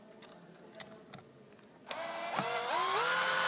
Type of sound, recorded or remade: recorded